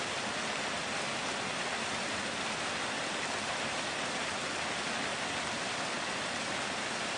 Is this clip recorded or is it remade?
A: recorded